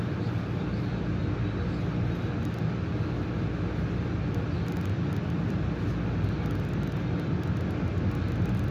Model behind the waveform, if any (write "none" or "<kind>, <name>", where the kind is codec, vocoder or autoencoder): none